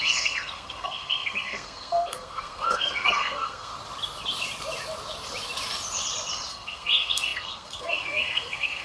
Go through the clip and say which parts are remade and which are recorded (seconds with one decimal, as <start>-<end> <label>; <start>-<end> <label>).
0.0-3.7 remade; 3.7-6.5 recorded; 6.5-8.8 remade